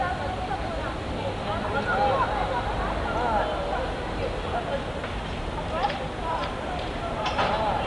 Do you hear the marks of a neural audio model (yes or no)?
no